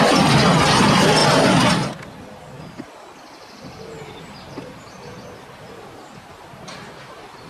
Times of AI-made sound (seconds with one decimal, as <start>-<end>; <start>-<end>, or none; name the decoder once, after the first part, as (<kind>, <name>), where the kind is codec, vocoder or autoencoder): none